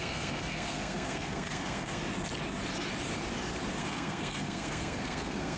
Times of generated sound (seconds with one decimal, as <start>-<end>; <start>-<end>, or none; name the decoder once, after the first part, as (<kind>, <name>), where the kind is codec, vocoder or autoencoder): 0.0-2.0 (codec, SNAC); 3.8-5.6